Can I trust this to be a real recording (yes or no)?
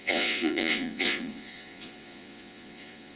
no